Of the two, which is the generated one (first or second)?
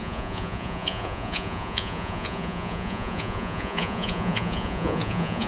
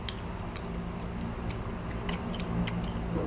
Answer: first